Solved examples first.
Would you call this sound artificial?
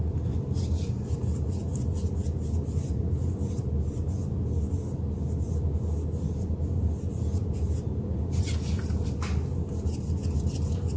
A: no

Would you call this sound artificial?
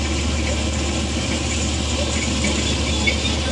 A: no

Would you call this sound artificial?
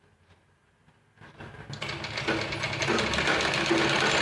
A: no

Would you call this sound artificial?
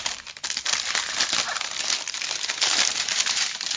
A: yes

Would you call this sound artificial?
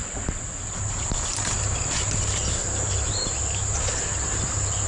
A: no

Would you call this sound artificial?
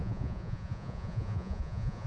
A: yes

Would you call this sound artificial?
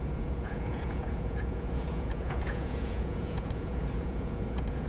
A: yes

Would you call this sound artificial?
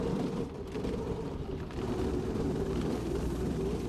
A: yes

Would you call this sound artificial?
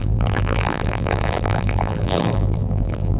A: yes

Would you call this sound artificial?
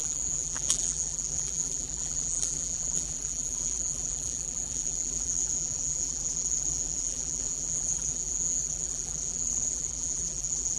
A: yes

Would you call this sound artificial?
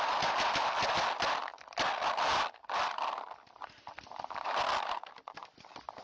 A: no